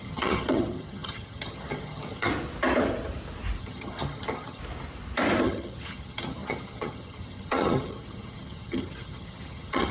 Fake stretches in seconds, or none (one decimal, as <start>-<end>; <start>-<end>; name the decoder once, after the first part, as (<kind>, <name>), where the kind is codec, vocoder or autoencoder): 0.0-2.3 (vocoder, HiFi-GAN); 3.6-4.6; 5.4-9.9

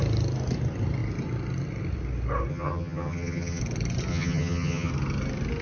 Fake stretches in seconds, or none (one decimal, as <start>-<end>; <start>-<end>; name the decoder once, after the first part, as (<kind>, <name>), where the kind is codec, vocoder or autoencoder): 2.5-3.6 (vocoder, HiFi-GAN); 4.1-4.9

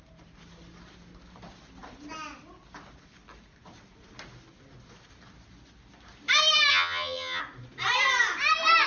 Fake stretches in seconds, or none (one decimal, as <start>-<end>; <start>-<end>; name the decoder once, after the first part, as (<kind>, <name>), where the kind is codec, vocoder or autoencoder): 6.7-7.4 (vocoder, HiFi-GAN)

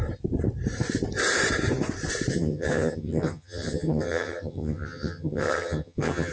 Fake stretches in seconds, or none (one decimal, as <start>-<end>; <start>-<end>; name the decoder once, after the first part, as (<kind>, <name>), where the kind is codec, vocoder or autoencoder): 2.3-6.3 (vocoder, HiFi-GAN)

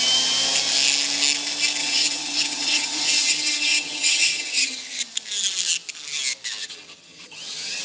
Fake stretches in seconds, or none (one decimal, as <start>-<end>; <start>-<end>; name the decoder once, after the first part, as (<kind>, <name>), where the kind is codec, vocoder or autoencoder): 1.8-5.0 (vocoder, HiFi-GAN); 6.6-7.8